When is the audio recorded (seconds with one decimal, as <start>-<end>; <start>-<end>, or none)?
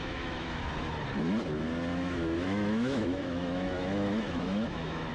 0.6-1.9